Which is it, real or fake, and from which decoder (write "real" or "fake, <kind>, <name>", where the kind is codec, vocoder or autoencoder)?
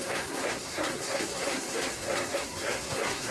fake, codec, SNAC